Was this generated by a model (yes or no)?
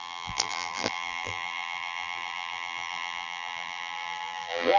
yes